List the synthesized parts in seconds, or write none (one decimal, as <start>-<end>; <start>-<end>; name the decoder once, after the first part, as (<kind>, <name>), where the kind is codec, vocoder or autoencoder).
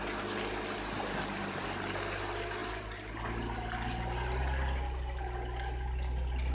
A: none